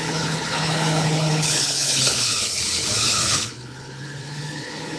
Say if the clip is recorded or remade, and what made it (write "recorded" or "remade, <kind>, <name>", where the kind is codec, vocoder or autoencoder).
remade, codec, HILCodec